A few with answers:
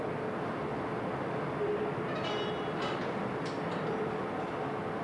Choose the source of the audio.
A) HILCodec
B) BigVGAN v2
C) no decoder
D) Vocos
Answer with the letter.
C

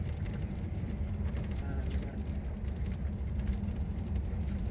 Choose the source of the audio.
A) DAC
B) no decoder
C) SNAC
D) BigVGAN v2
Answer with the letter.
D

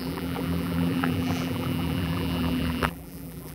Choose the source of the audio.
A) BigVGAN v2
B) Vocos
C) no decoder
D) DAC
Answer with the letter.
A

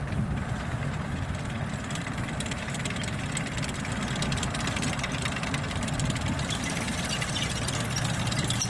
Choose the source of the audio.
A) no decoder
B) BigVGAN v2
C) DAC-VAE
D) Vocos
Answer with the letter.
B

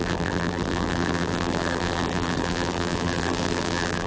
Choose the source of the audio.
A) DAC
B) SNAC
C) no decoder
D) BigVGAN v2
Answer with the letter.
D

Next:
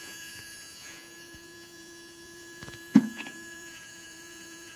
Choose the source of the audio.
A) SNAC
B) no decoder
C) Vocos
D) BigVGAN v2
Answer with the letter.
C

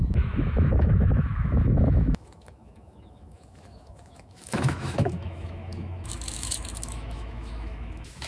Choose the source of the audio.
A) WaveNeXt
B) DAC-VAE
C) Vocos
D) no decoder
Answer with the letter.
B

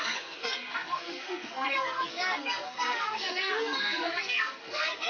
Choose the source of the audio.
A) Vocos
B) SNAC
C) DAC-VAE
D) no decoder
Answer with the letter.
B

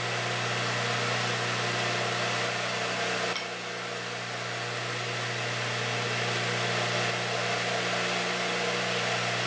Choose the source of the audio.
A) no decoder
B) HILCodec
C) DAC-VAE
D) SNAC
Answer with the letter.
A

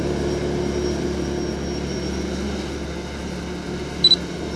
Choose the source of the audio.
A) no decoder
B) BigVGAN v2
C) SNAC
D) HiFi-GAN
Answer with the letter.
A